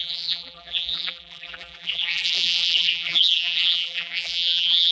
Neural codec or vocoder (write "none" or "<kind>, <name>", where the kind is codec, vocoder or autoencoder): vocoder, BigVGAN v2